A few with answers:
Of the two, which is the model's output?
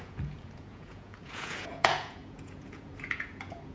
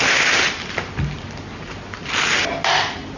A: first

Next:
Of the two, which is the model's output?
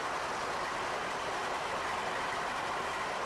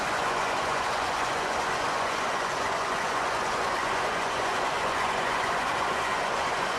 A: second